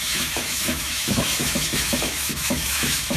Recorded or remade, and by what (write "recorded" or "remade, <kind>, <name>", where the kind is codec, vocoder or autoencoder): remade, autoencoder, DAC-VAE